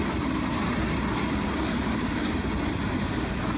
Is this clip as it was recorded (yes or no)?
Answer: yes